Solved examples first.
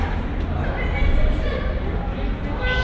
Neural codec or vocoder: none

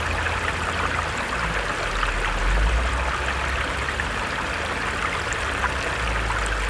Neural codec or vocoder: none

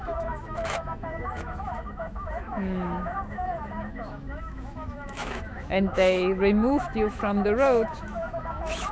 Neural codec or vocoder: autoencoder, DAC-VAE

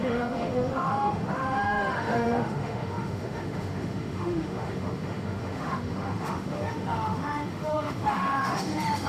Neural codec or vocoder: autoencoder, DAC-VAE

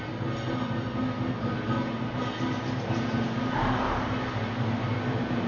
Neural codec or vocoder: none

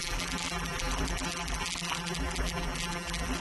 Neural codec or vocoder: vocoder, BigVGAN v2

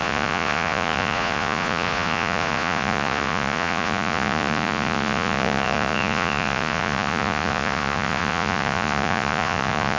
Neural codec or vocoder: vocoder, Vocos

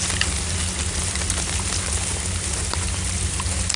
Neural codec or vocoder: none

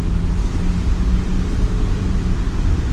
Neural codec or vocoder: none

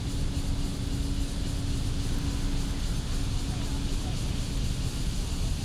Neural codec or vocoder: none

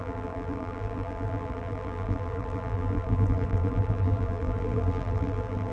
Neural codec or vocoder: vocoder, BigVGAN v2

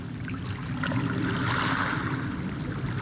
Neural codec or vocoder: none